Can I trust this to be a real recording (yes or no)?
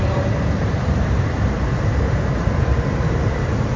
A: no